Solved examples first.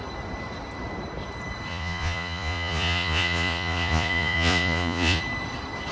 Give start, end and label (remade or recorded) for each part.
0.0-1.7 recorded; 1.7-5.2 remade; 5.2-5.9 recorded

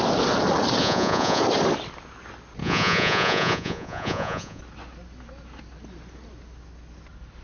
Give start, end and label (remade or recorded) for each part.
0.0-0.8 recorded; 0.8-1.4 remade; 1.4-2.6 recorded; 2.6-4.6 remade; 4.6-7.4 recorded